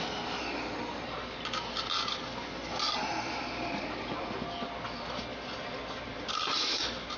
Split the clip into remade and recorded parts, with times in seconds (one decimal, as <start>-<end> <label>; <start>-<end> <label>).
0.0-3.0 recorded; 3.0-4.0 remade; 4.0-6.1 recorded; 6.1-6.6 remade; 6.6-7.2 recorded